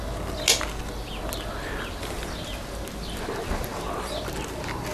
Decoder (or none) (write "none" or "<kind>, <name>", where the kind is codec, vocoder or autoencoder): none